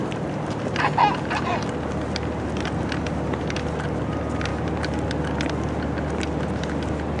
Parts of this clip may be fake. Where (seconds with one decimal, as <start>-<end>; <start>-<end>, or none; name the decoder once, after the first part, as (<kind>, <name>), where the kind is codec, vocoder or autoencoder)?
none